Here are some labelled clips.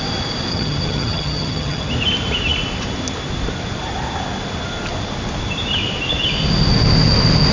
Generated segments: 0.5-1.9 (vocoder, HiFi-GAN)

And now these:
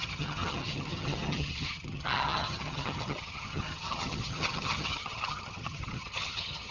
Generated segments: 0.0-6.7 (vocoder, HiFi-GAN)

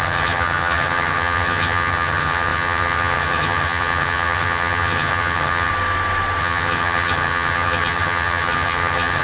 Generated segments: 0.0-5.7 (vocoder, HiFi-GAN); 6.4-9.2

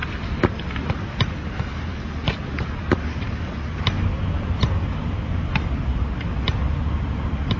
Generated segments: none